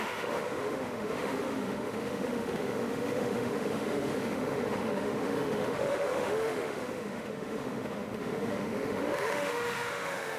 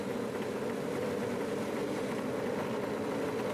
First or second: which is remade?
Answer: first